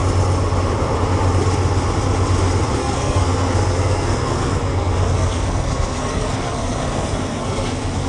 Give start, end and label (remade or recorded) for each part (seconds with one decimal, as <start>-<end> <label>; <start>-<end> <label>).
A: 0.0-2.8 recorded; 2.8-8.1 remade